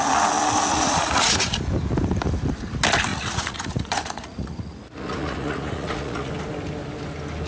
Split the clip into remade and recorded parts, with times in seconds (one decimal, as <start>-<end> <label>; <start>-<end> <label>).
0.0-0.7 recorded; 0.7-1.5 remade; 1.5-3.1 recorded; 3.1-6.3 remade; 6.3-7.5 recorded

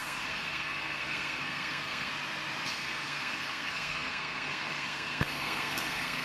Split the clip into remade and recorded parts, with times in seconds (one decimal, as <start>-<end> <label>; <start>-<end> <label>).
0.0-2.1 remade; 2.1-2.7 recorded; 2.7-6.2 remade

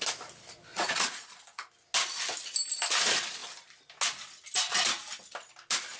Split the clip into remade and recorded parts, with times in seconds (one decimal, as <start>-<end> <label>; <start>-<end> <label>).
0.0-0.7 recorded; 0.7-1.7 remade; 1.7-6.0 recorded

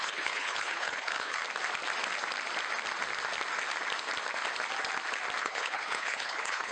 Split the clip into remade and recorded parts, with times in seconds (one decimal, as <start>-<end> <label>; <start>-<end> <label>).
0.0-1.4 remade; 1.4-5.4 recorded; 5.4-6.7 remade

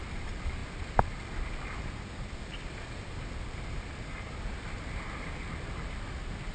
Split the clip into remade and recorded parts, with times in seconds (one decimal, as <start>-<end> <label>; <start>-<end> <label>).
0.0-6.5 recorded

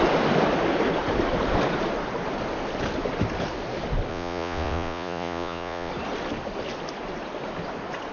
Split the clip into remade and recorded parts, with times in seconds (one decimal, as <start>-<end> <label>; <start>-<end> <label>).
0.0-4.1 recorded; 4.1-5.9 remade; 5.9-8.1 recorded

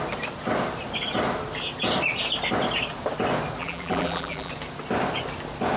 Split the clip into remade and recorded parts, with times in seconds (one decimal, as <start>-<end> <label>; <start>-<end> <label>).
0.0-3.6 recorded; 3.6-4.5 remade; 4.5-5.8 recorded